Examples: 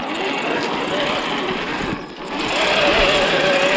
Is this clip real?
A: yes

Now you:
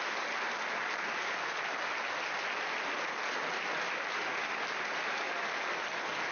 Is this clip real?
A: yes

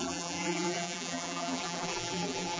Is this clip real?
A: no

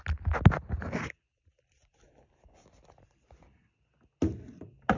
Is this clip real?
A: yes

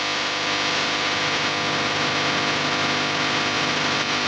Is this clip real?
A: yes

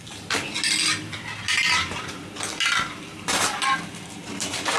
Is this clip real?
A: yes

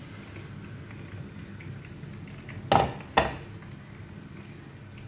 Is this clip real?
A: yes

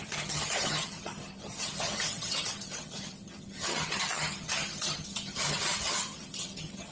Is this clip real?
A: no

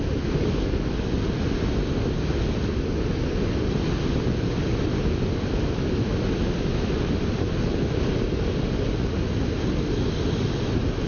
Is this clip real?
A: yes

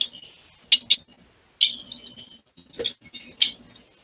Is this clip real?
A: yes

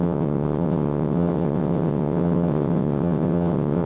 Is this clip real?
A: no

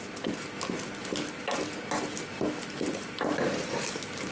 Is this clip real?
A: yes